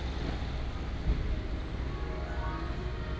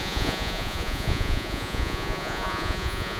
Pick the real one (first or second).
first